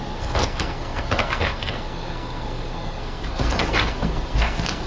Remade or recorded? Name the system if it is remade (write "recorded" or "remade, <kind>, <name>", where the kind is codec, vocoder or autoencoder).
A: remade, codec, SNAC